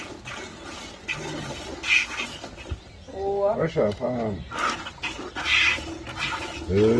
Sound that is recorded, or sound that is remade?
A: recorded